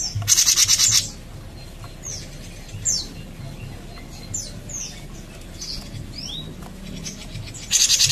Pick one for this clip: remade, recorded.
recorded